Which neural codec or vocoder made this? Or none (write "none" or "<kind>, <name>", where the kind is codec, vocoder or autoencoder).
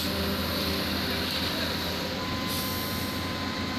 none